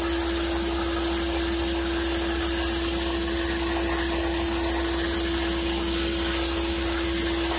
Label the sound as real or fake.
real